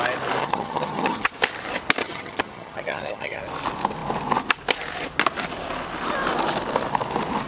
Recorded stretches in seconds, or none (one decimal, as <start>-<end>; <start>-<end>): 0.0-0.4; 1.3-2.0; 3.4-7.5